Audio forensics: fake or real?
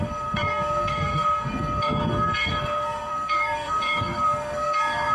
fake